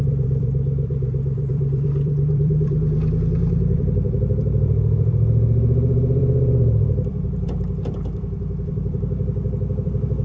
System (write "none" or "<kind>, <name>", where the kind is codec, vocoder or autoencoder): vocoder, BigVGAN v2